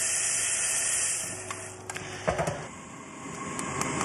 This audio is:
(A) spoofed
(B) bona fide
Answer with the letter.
B